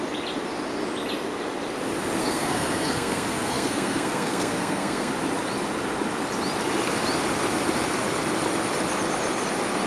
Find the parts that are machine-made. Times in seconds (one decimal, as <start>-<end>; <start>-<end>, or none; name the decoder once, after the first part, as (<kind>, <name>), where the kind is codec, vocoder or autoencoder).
2.2-5.1 (codec, SNAC)